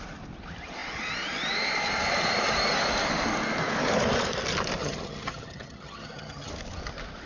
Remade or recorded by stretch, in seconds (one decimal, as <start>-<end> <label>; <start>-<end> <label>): 0.0-4.8 recorded; 4.8-6.5 remade; 6.5-7.3 recorded